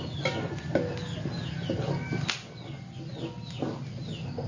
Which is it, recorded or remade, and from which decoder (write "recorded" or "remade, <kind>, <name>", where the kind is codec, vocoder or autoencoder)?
recorded